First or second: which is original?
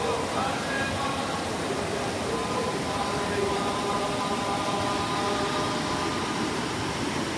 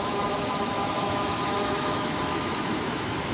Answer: first